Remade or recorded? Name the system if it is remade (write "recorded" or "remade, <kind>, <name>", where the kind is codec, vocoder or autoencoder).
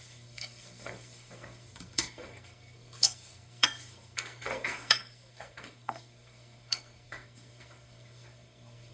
remade, codec, SNAC